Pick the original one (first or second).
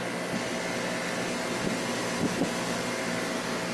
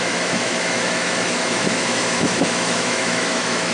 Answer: first